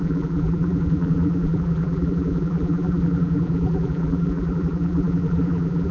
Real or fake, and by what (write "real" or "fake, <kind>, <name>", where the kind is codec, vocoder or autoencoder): fake, vocoder, BigVGAN v2